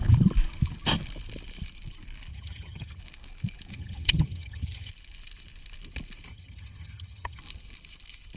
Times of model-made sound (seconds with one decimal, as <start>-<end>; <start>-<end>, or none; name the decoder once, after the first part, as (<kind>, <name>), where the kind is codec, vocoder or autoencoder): 2.3-3.0 (vocoder, HiFi-GAN); 3.7-4.9; 6.3-7.4